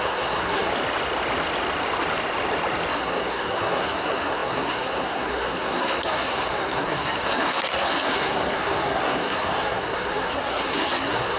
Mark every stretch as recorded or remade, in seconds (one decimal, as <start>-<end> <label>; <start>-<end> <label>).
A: 0.0-0.7 remade; 0.7-2.9 recorded; 2.9-11.4 remade